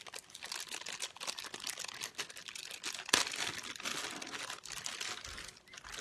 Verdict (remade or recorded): recorded